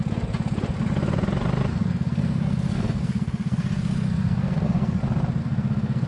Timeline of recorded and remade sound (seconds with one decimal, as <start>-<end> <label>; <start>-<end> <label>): 0.0-1.7 recorded; 1.7-5.0 remade; 5.0-5.4 recorded; 5.4-6.1 remade